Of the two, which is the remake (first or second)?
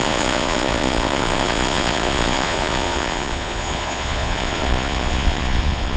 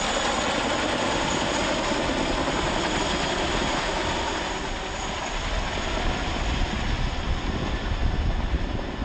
first